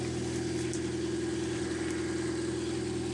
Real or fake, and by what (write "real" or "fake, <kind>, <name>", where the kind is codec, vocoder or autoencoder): real